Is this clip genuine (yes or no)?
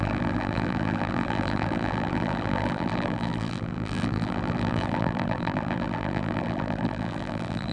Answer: no